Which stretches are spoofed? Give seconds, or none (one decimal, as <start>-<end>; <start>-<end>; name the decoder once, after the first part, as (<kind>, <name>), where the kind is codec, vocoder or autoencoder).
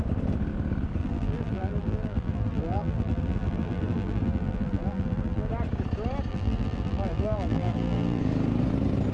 1.0-5.5 (vocoder, BigVGAN v2); 6.3-8.2